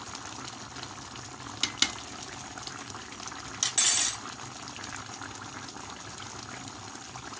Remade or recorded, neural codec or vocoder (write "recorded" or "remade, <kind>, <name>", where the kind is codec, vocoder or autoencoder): recorded